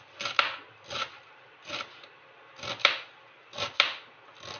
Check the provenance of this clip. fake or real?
real